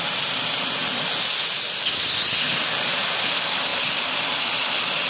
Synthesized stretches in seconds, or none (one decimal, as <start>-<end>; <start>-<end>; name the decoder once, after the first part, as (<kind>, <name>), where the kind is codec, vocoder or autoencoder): 3.7-4.2 (vocoder, BigVGAN v2)